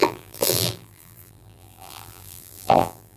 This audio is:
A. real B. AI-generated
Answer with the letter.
B